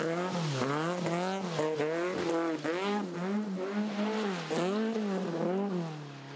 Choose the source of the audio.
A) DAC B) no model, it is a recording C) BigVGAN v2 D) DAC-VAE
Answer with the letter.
B